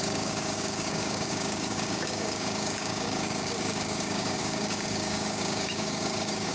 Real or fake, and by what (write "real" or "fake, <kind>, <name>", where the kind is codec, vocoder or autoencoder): fake, codec, DAC